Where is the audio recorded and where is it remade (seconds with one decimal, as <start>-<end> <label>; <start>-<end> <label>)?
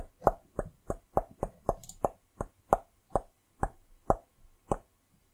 0.0-5.3 recorded